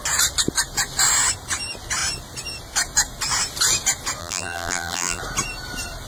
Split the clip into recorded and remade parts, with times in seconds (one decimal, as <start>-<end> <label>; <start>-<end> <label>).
0.0-4.2 recorded; 4.2-5.2 remade; 5.2-6.1 recorded

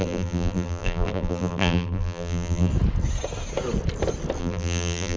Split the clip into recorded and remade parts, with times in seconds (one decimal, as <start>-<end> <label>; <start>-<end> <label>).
0.0-2.7 remade; 2.7-4.4 recorded; 4.4-5.2 remade